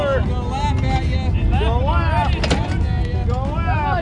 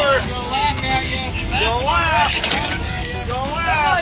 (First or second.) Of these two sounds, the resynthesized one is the second